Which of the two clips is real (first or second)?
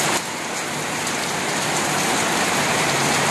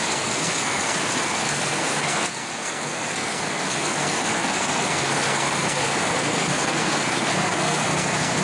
first